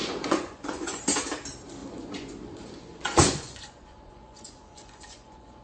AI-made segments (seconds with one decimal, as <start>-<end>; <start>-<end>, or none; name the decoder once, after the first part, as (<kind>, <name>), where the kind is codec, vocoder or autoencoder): 0.0-1.0 (vocoder, Vocos); 1.8-5.6